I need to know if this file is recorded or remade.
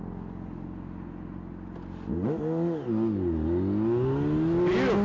recorded